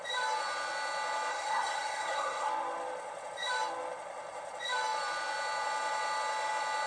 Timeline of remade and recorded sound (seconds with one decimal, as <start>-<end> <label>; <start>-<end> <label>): 0.0-1.3 recorded; 1.3-2.5 remade; 2.5-6.9 recorded